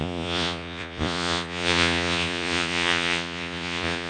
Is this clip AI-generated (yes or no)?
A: yes